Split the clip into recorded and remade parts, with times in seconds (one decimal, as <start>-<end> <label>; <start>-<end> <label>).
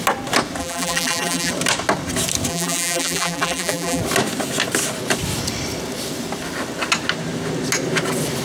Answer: 0.0-0.6 recorded; 0.6-1.5 remade; 1.5-2.5 recorded; 2.5-4.0 remade; 4.0-8.4 recorded